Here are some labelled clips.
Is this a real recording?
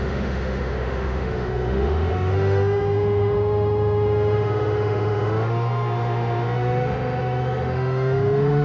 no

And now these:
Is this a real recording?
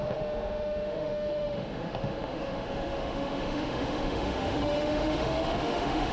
no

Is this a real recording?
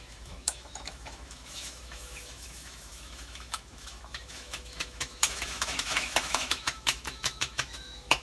no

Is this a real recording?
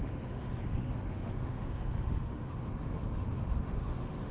no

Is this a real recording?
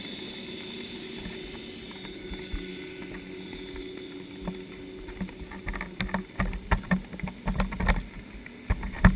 yes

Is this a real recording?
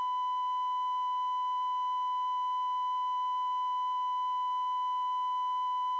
yes